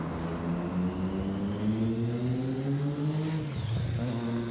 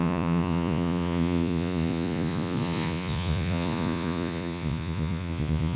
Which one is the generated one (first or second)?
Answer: second